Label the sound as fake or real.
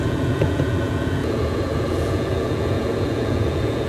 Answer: fake